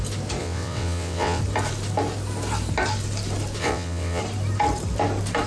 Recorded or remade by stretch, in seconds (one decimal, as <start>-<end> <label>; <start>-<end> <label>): 0.0-0.4 recorded; 0.4-1.4 remade; 1.4-3.6 recorded; 3.6-4.2 remade; 4.2-5.5 recorded